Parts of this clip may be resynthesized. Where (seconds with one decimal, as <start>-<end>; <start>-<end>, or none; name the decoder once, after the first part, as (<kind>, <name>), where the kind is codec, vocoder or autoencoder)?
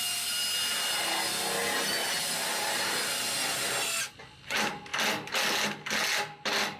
none